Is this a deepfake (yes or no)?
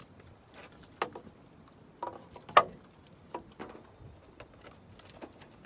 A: no